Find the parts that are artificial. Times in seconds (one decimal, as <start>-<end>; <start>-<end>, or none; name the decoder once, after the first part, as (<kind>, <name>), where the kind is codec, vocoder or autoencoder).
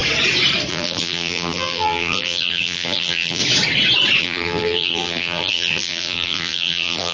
0.7-3.4 (vocoder, BigVGAN v2); 4.2-7.1